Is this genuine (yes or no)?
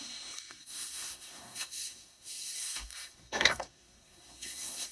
no